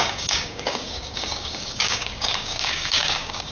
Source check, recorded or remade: remade